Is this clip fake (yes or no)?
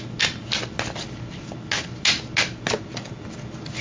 no